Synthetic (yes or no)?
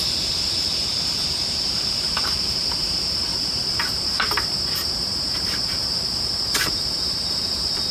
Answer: yes